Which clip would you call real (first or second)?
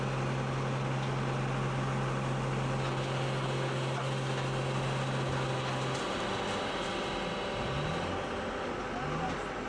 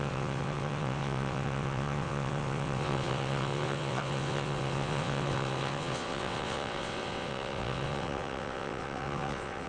first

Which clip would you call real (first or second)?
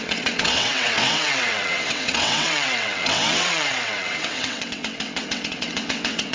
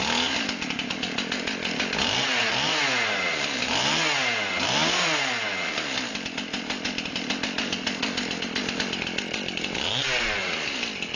second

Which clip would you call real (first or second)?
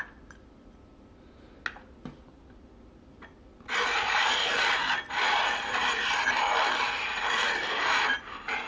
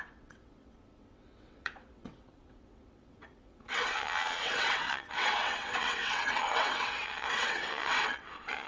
first